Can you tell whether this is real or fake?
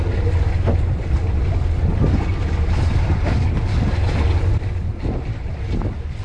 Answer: real